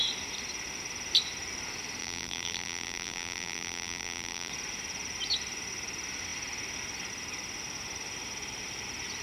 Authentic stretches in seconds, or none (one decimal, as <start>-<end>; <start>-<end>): 0.0-2.0; 4.5-9.2